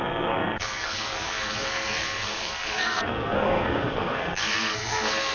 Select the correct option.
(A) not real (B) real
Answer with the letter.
A